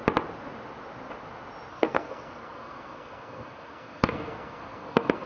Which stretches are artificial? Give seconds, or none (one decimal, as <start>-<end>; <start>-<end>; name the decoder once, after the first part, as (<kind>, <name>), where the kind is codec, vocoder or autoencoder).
1.7-5.3 (codec, SNAC)

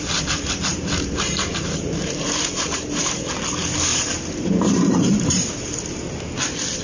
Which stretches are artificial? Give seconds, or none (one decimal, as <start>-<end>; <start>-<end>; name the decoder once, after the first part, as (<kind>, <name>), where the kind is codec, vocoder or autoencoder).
0.7-3.0 (vocoder, BigVGAN v2); 3.9-6.2

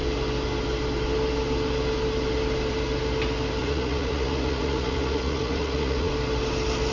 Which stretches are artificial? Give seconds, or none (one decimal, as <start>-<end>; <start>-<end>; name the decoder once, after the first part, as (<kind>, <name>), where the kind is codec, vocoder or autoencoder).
3.6-6.1 (vocoder, Vocos)

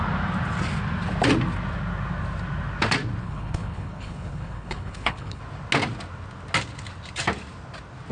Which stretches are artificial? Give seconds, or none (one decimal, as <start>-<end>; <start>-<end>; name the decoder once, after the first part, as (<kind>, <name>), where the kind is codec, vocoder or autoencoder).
3.2-5.4 (codec, HILCodec)

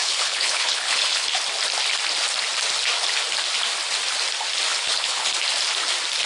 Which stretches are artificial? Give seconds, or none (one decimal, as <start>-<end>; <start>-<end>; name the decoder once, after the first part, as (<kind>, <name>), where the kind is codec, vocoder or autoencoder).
0.0-1.4 (codec, HILCodec); 4.7-5.3